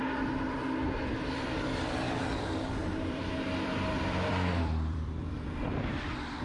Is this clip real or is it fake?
fake